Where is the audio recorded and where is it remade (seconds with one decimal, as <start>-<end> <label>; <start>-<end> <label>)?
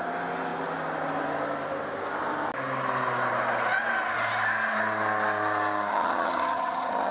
0.0-5.9 recorded; 5.9-7.1 remade